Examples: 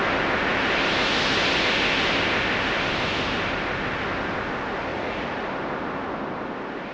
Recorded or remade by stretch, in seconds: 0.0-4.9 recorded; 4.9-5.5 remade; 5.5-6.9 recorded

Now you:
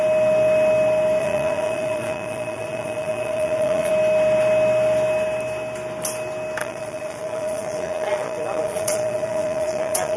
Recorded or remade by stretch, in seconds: 0.0-1.2 recorded; 1.2-3.9 remade; 3.9-6.6 recorded; 6.6-10.2 remade

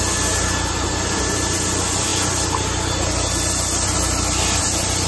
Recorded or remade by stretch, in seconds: 0.0-5.1 recorded

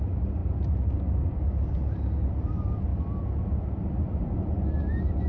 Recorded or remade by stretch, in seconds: 0.0-5.3 recorded

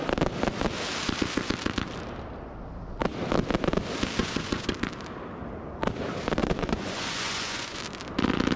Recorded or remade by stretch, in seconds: 0.0-4.2 recorded; 4.2-4.7 remade; 4.7-6.4 recorded; 6.4-7.8 remade; 7.8-8.6 recorded